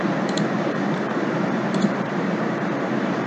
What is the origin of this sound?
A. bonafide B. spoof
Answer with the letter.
B